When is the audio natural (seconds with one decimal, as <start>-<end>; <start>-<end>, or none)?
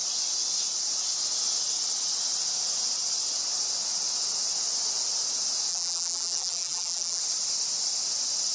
0.0-5.7; 7.2-8.5